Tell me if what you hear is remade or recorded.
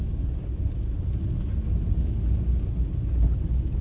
recorded